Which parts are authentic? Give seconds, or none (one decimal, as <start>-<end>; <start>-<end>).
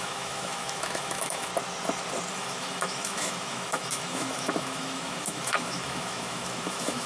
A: 1.5-2.3